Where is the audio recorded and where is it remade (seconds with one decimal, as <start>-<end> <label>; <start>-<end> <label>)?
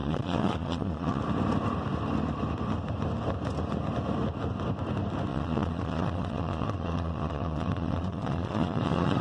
0.0-1.2 remade; 1.2-5.3 recorded; 5.3-9.2 remade